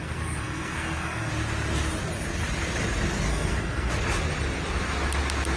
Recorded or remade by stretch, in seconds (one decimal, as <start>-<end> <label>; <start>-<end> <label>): 0.0-1.3 remade; 1.3-3.3 recorded; 3.3-3.9 remade; 3.9-5.6 recorded